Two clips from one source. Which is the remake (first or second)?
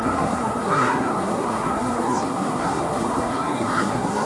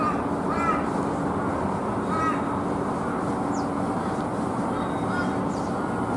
first